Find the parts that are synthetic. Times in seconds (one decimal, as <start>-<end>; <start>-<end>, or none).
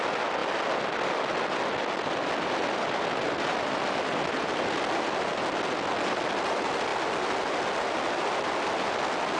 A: none